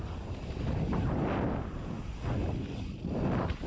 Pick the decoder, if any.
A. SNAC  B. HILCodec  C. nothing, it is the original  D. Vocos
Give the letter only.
C